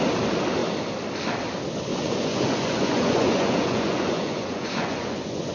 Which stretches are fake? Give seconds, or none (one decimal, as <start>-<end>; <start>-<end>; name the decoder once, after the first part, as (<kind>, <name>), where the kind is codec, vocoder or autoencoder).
1.9-5.5 (vocoder, Vocos)